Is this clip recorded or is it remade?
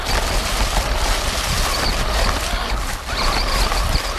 recorded